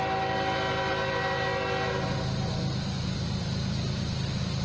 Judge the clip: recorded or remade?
recorded